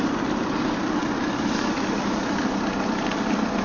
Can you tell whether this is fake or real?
real